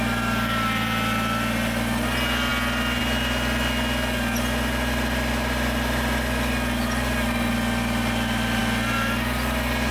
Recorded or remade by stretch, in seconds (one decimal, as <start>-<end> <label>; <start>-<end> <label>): 0.0-9.9 recorded